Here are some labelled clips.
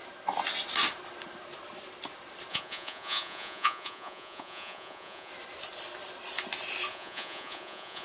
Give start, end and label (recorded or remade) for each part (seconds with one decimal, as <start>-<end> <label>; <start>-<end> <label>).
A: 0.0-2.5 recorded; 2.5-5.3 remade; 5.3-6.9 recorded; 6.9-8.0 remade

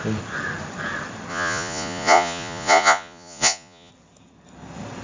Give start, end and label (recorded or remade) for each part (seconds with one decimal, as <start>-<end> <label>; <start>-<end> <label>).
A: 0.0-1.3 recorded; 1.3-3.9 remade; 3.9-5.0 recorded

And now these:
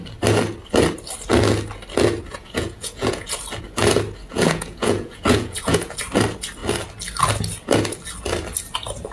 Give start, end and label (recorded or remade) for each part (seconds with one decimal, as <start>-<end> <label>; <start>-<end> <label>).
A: 0.0-2.3 recorded; 2.3-3.3 remade; 3.3-4.3 recorded; 4.3-6.0 remade; 6.0-9.1 recorded

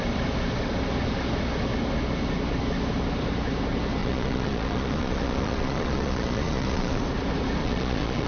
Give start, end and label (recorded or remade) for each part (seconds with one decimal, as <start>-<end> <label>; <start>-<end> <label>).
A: 0.0-4.0 recorded; 4.0-7.0 remade; 7.0-7.6 recorded; 7.6-8.3 remade

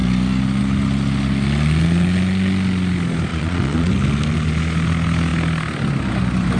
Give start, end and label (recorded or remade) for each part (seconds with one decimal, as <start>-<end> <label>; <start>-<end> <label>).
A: 0.0-3.3 recorded; 3.3-3.9 remade; 3.9-6.6 recorded

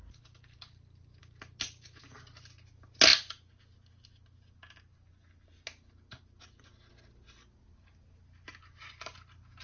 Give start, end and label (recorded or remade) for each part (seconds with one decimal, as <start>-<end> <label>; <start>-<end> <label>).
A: 0.0-9.6 recorded